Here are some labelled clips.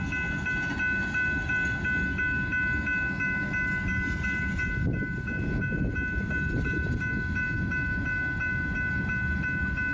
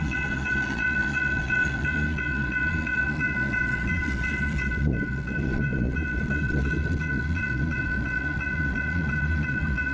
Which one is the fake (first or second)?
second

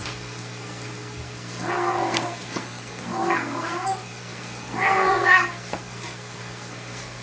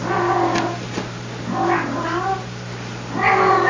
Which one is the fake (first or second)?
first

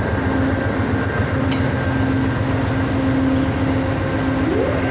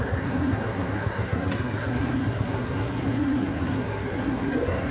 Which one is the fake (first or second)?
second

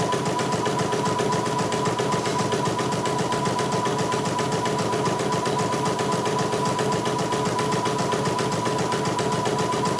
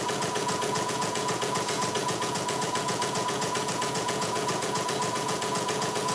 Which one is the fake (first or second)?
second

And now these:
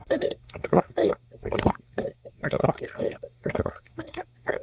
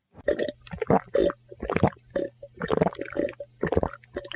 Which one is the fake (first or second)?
first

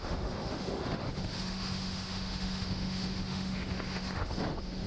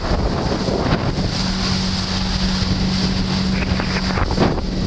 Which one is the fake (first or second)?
first